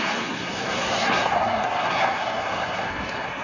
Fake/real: fake